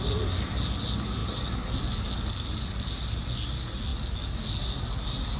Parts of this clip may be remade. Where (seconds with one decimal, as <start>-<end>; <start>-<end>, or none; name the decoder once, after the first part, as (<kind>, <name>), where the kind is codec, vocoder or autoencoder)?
none